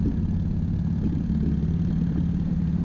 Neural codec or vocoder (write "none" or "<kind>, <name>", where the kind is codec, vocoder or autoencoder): vocoder, BigVGAN v2